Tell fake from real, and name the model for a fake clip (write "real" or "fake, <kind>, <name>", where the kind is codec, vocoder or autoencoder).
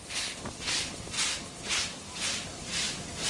real